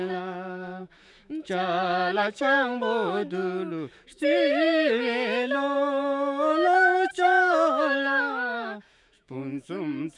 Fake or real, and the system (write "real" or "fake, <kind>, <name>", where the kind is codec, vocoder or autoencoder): fake, autoencoder, DAC-VAE